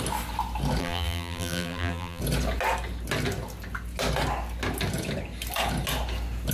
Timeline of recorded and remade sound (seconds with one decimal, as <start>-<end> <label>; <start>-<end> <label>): 0.0-0.8 recorded; 0.8-2.2 remade; 2.2-6.5 recorded